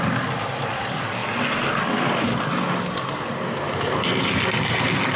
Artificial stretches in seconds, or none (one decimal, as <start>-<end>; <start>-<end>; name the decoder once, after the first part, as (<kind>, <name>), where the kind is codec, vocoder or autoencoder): none